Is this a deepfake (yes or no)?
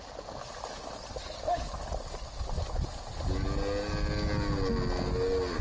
no